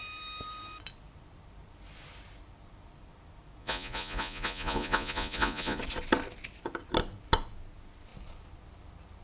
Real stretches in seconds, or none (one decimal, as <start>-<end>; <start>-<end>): 0.0-3.6; 5.8-9.2

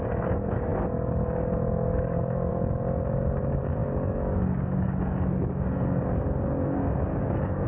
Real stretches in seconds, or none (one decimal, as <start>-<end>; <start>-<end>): none

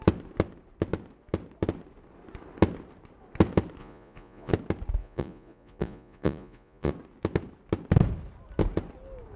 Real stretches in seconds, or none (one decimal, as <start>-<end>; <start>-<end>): 0.0-3.8; 4.5-5.0; 6.9-9.4